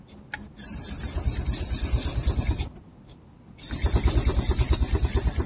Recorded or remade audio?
recorded